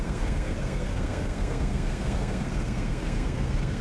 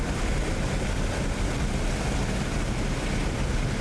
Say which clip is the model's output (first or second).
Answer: first